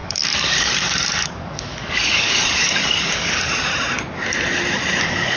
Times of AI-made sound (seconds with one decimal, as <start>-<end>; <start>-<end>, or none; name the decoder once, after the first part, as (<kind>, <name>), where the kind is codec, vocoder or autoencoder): 0.0-3.7 (codec, DAC); 5.0-5.4